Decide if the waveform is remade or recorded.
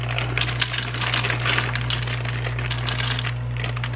recorded